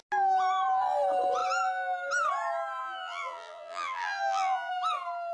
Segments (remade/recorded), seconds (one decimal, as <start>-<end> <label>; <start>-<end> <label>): 0.0-2.8 recorded; 2.8-4.7 remade; 4.7-5.3 recorded